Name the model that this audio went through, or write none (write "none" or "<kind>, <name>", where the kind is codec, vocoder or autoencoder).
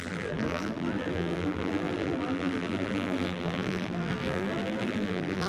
vocoder, BigVGAN v2